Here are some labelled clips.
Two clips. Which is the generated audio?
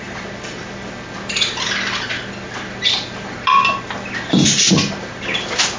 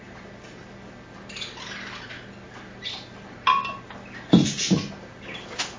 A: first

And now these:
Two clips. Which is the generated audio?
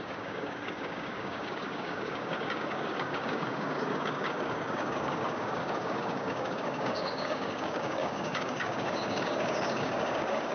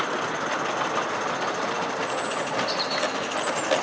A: first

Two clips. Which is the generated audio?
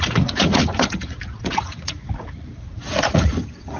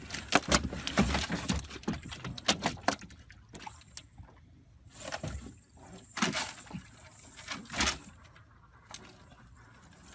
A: first